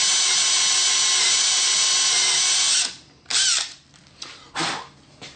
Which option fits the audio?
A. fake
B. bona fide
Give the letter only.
B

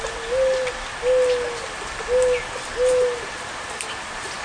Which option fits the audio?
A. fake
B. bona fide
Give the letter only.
B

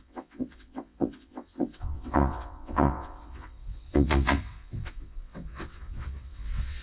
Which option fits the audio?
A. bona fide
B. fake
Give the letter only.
B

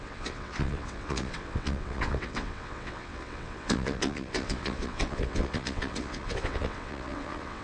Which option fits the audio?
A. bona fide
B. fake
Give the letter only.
B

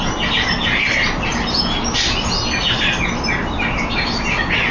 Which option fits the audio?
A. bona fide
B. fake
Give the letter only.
A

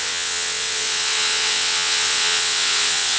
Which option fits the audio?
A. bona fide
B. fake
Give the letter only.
B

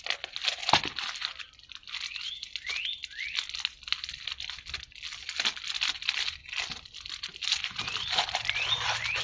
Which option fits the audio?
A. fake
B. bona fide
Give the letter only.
B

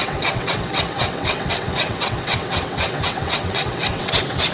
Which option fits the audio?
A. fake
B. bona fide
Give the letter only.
A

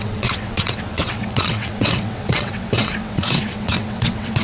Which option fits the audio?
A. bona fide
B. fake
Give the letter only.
B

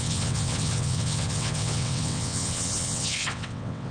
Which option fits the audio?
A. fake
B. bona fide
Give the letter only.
A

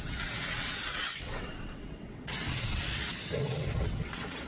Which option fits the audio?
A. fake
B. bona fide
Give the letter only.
A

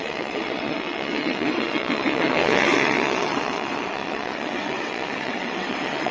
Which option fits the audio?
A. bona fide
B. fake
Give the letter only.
B